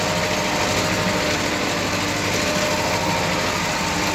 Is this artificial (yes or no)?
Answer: no